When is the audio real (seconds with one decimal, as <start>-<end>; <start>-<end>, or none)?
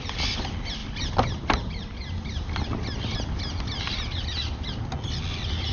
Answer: 0.0-5.7